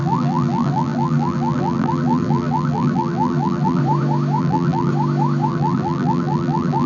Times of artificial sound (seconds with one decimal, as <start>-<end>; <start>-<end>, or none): 0.0-3.8; 4.4-4.9; 5.5-6.9